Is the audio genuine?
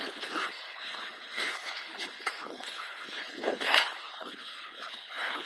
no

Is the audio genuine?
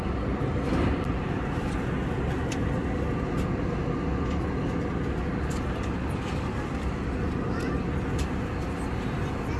yes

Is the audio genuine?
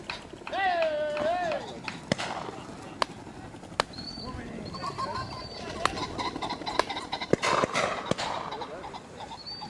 yes